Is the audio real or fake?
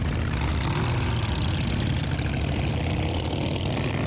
real